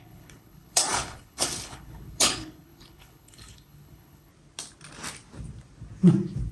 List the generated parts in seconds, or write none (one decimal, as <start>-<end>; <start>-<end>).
0.0-4.3

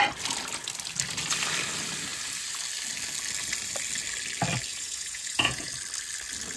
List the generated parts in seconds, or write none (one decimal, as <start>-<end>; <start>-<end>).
4.7-5.7

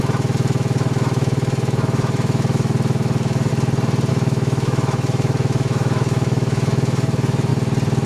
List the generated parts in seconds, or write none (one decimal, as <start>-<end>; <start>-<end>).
0.0-3.5; 4.1-7.5

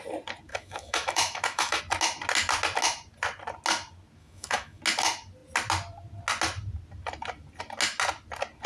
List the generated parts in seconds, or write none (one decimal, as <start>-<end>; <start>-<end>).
0.5-1.8; 4.2-4.8

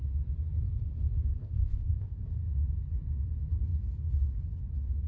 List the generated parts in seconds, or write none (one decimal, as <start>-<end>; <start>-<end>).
1.4-2.2

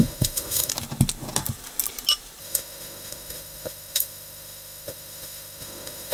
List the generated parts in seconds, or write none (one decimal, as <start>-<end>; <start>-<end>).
0.0-0.7; 2.4-6.1